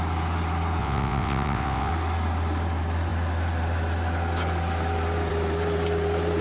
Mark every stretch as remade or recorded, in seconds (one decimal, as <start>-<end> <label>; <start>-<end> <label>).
0.0-0.8 recorded; 0.8-1.9 remade; 1.9-6.4 recorded